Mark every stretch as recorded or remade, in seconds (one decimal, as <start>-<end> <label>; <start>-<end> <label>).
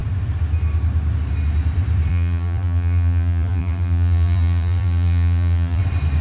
0.0-2.1 recorded; 2.1-5.8 remade; 5.8-6.2 recorded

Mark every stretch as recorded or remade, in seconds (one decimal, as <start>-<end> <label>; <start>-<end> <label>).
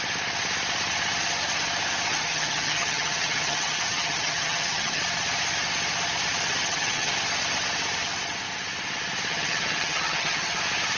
0.0-2.1 recorded; 2.1-5.0 remade; 5.0-6.6 recorded; 6.6-7.1 remade; 7.1-9.3 recorded; 9.3-10.6 remade; 10.6-11.0 recorded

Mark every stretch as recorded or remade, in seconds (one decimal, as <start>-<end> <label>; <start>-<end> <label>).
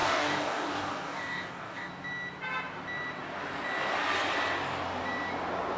0.0-1.9 remade; 1.9-5.8 recorded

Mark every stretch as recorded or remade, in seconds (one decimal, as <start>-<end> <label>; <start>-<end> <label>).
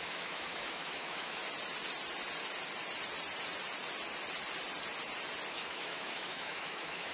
0.0-1.4 remade; 1.4-5.5 recorded; 5.5-7.1 remade